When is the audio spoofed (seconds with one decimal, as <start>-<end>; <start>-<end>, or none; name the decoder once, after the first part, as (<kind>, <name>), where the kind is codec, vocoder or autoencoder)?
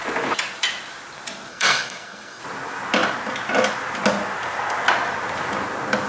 1.5-2.4 (codec, SNAC)